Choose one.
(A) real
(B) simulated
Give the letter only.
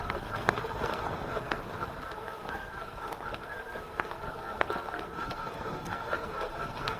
B